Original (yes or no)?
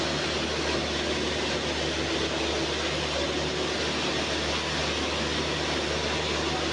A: yes